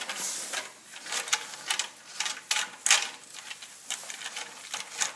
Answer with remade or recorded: recorded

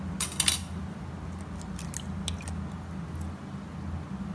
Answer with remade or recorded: recorded